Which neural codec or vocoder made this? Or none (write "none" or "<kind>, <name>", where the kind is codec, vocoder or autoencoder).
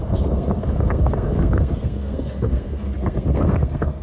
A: codec, SNAC